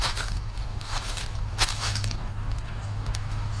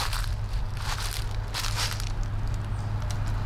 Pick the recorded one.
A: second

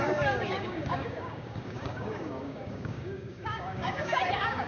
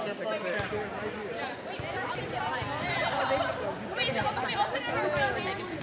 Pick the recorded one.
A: second